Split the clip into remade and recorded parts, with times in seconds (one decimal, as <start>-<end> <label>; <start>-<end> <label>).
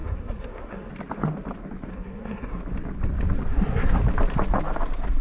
0.0-0.9 remade; 0.9-1.9 recorded; 1.9-2.6 remade; 2.6-3.5 recorded; 3.5-4.0 remade; 4.0-5.2 recorded